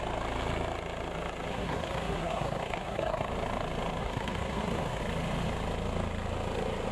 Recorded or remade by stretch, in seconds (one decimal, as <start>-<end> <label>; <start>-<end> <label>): 0.0-1.5 recorded; 1.5-3.3 remade; 3.3-4.0 recorded; 4.0-5.0 remade; 5.0-6.9 recorded